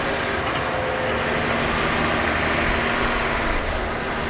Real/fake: real